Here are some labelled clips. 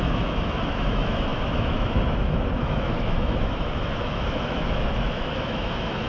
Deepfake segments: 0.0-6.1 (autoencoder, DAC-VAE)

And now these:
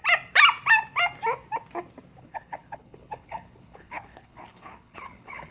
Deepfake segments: 2.2-5.5 (codec, HILCodec)

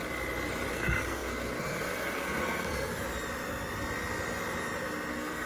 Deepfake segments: 0.7-2.9 (codec, SNAC); 5.1-5.5

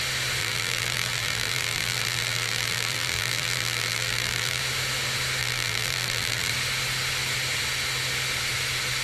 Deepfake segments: 0.4-4.6 (vocoder, BigVGAN v2); 5.4-6.5